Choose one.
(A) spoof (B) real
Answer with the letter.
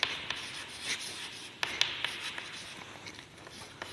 B